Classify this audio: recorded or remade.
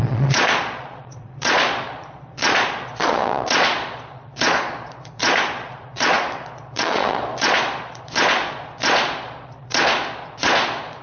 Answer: remade